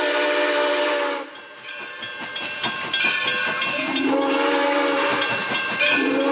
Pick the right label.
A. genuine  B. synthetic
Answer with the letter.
B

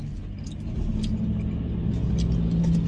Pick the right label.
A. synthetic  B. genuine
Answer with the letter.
B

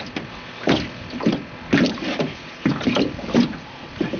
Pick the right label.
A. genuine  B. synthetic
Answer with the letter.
A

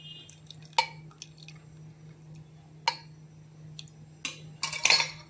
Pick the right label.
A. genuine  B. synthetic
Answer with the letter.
A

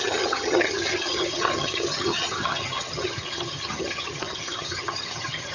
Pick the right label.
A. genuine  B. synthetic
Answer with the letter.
B